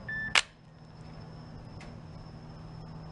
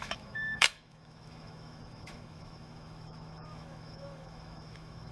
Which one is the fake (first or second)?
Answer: second